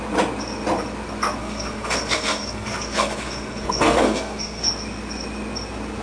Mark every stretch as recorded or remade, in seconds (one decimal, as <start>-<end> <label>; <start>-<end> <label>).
0.0-1.4 recorded; 1.4-4.6 remade; 4.6-6.0 recorded